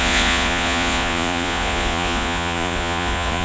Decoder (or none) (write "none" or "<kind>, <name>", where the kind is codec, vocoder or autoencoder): vocoder, Vocos